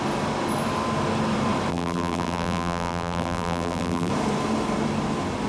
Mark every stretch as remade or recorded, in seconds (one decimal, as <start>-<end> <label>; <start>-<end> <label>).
0.0-1.7 recorded; 1.7-4.1 remade; 4.1-5.5 recorded